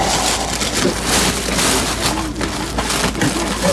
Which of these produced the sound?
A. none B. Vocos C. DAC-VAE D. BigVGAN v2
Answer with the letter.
A